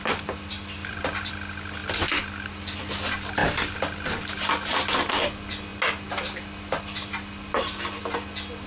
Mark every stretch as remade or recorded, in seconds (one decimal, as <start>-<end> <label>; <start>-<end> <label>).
0.0-0.8 recorded; 0.8-1.3 remade; 1.3-8.7 recorded